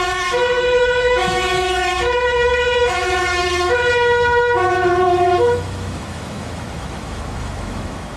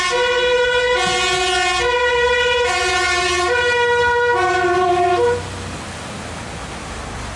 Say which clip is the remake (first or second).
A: first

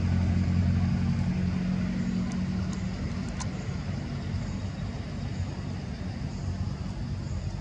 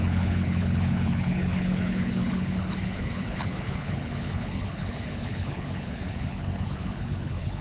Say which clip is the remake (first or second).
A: second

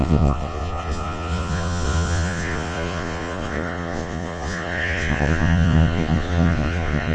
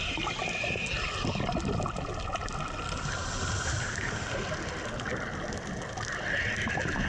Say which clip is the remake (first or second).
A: first